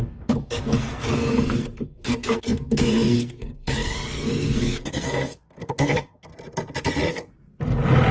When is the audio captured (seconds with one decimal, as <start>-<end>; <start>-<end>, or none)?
6.3-7.1; 7.5-8.1